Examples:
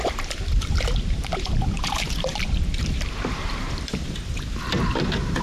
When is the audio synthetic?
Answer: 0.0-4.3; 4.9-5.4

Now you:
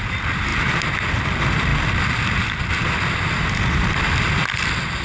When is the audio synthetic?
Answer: 1.7-5.0

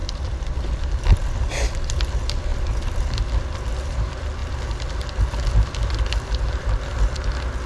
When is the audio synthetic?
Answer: 0.0-2.1; 2.5-3.3

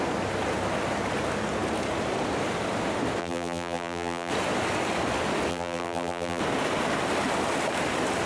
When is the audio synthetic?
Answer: 3.2-4.3; 5.5-6.4

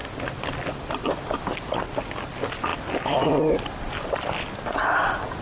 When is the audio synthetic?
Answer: none

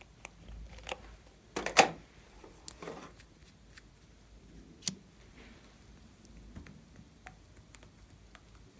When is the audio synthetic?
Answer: none

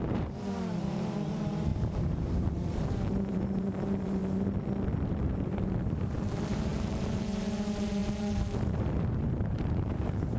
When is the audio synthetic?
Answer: 0.0-4.2; 5.0-10.4

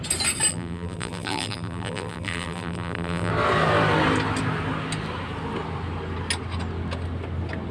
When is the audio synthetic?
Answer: 0.5-3.3